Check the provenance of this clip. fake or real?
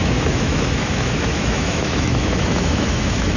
fake